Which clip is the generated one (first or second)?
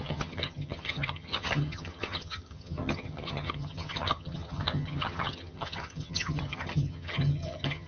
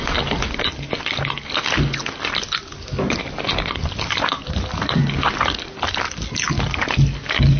first